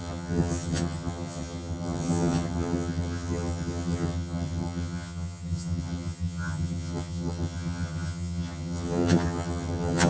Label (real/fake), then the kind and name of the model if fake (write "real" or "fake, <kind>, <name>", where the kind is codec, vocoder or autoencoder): fake, vocoder, HiFi-GAN